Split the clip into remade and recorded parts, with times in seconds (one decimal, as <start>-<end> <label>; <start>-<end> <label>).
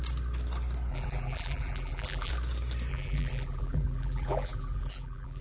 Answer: 0.0-0.9 recorded; 0.9-2.3 remade; 2.3-2.9 recorded; 2.9-5.4 remade